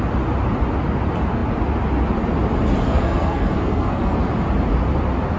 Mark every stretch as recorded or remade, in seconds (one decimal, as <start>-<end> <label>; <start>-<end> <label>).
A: 0.0-2.9 recorded; 2.9-4.2 remade; 4.2-5.4 recorded